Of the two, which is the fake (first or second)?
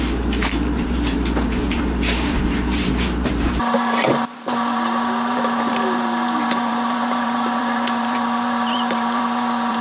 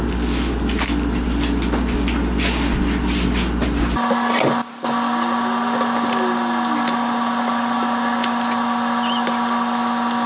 first